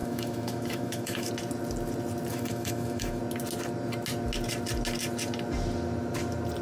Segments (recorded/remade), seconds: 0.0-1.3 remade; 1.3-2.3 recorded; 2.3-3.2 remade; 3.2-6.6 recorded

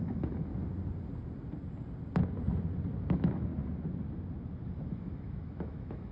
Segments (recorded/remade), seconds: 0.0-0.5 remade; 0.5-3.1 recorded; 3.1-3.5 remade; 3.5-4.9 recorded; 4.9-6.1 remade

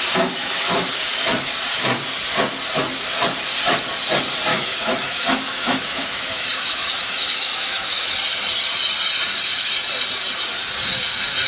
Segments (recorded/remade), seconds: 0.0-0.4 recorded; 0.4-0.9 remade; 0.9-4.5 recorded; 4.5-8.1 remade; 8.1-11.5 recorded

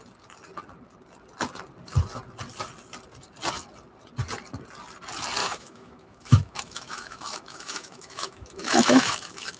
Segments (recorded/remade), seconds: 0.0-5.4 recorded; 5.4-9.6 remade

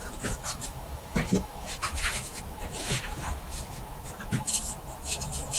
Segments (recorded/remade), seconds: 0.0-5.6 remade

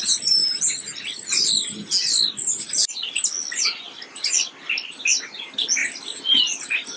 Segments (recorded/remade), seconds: 0.0-7.0 recorded

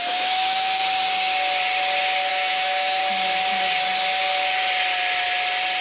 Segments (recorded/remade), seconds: 0.0-0.8 remade; 0.8-2.3 recorded; 2.3-3.0 remade; 3.0-5.8 recorded